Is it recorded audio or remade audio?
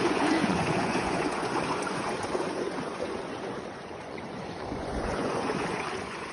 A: remade